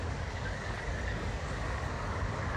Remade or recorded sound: remade